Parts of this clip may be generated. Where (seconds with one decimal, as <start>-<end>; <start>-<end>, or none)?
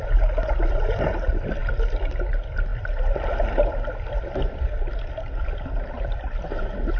none